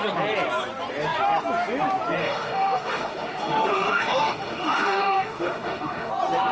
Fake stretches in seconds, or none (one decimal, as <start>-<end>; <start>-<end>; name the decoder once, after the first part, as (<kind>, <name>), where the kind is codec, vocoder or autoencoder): 2.2-6.1 (autoencoder, DAC-VAE)